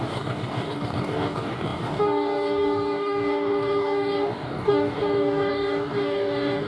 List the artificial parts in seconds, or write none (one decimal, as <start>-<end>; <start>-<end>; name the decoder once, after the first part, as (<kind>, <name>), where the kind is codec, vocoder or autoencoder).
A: 0.0-6.7 (codec, DAC)